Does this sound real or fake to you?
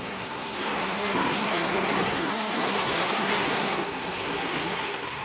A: fake